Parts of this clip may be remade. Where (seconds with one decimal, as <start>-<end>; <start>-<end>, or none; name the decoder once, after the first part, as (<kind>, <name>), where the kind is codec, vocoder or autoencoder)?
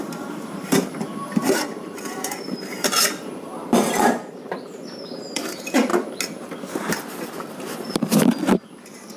0.0-5.9 (vocoder, BigVGAN v2); 8.7-9.2